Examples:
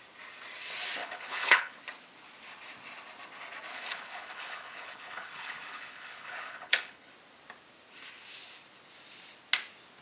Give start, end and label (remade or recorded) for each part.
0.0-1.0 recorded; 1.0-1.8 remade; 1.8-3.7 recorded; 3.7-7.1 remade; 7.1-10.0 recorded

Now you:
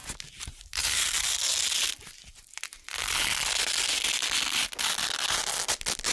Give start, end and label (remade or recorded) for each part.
0.0-1.2 remade; 1.2-6.1 recorded

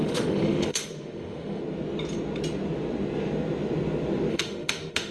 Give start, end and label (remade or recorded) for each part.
0.0-1.6 remade; 1.6-4.3 recorded; 4.3-5.1 remade

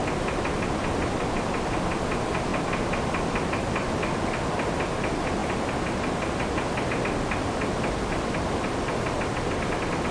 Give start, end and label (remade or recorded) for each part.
0.0-10.1 recorded

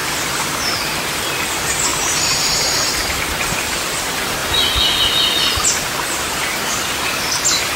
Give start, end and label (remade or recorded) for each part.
0.0-1.9 recorded; 1.9-2.5 remade; 2.5-7.8 recorded

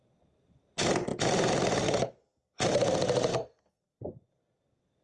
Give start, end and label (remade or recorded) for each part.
0.0-3.3 recorded; 3.3-3.8 remade; 3.8-5.0 recorded

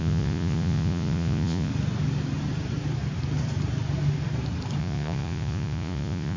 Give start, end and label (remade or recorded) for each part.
0.0-1.7 remade; 1.7-4.8 recorded; 4.8-6.4 remade